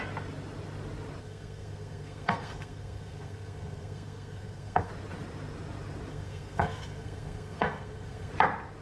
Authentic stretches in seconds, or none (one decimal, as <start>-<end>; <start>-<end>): 0.0-1.2; 4.9-6.1; 8.3-8.8